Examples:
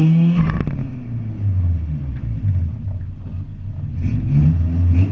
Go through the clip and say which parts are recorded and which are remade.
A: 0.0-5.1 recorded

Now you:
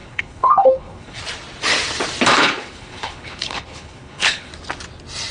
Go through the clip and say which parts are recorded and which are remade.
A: 0.0-1.2 remade; 1.2-2.3 recorded; 2.3-4.5 remade; 4.5-5.3 recorded

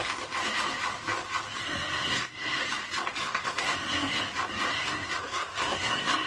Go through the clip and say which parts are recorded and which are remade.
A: 0.0-1.6 recorded; 1.6-2.6 remade; 2.6-3.2 recorded; 3.2-4.2 remade; 4.2-4.7 recorded; 4.7-6.3 remade